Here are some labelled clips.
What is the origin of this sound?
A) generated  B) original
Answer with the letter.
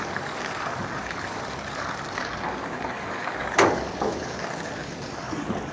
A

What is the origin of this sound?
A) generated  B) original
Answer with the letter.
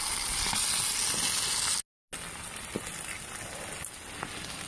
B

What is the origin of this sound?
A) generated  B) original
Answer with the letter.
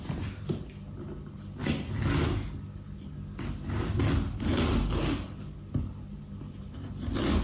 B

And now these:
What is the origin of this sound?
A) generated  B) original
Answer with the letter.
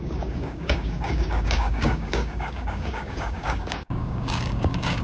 A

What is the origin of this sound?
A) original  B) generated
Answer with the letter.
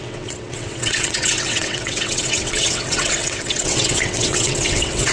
B